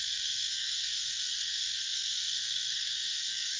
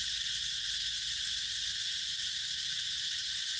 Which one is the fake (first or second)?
first